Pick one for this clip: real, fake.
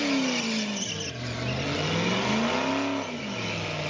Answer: real